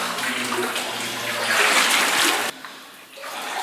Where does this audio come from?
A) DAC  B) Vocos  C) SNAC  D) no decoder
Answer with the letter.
D